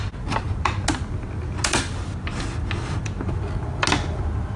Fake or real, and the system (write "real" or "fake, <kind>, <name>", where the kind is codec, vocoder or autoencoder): real